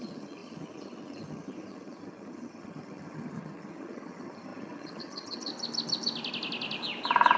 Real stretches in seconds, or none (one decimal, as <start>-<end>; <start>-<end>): 5.5-7.4